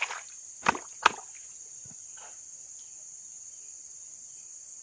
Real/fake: real